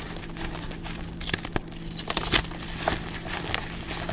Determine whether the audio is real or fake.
real